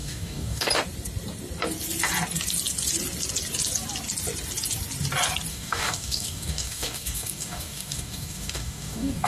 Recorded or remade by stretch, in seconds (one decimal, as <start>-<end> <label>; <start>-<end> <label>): 0.0-0.7 remade; 0.7-5.5 recorded; 5.5-9.3 remade